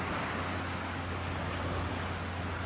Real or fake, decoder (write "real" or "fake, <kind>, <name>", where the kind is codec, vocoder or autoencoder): real